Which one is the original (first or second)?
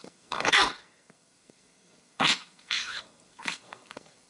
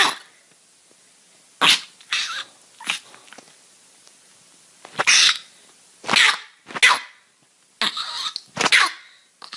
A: second